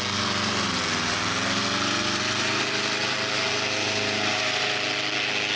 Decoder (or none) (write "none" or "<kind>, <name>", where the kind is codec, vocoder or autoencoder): none